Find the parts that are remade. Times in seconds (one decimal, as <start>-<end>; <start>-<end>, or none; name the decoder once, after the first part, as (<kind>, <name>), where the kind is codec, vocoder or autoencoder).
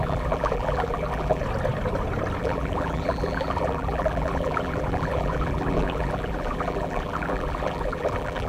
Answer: 0.0-1.4 (vocoder, BigVGAN v2); 2.4-8.5